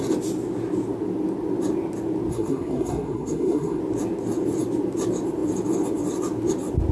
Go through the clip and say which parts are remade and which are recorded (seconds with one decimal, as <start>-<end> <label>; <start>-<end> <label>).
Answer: 0.0-2.3 recorded; 2.3-3.8 remade; 3.8-6.9 recorded